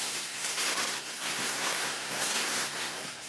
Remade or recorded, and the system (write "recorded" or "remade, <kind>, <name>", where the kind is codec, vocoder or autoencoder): remade, codec, SNAC